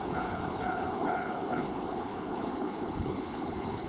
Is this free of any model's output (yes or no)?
no